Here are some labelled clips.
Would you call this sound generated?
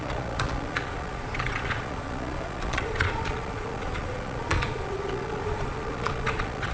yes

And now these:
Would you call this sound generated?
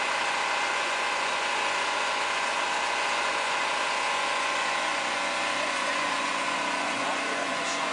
yes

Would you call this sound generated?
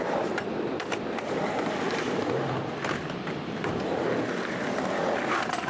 yes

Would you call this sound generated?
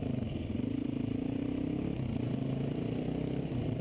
no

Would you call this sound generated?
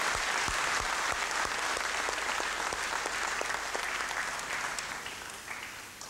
no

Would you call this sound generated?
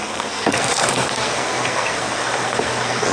yes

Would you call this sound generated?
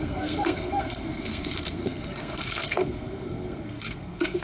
yes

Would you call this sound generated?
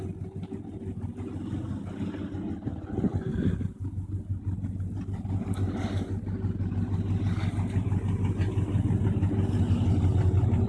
no